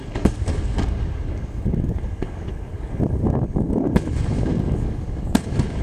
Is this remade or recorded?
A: remade